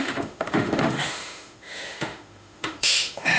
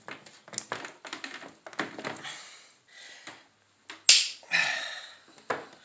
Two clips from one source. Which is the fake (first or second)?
first